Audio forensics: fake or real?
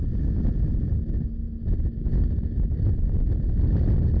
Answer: real